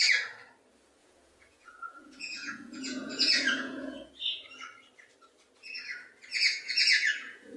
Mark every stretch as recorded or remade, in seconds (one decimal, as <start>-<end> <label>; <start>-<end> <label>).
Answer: 0.0-1.0 recorded; 1.0-4.1 remade; 4.1-6.3 recorded; 6.3-7.6 remade